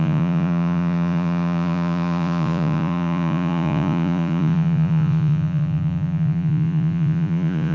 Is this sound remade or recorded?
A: remade